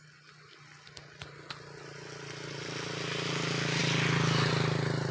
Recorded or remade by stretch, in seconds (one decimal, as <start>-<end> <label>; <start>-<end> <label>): 0.0-5.1 recorded